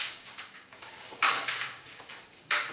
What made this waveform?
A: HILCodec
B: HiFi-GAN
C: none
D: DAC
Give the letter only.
D